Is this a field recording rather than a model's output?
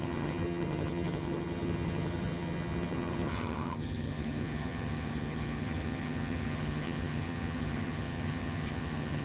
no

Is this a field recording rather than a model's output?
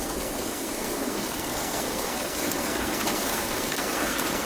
no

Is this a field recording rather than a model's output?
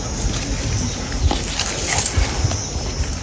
yes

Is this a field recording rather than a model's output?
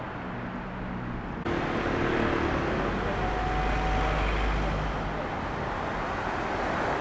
yes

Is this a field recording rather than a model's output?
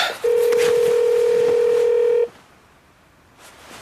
yes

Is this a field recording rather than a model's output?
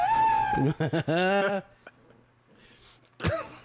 yes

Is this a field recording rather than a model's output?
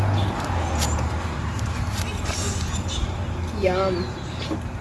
yes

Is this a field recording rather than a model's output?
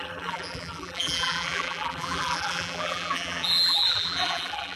no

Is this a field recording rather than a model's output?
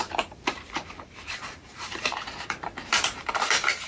no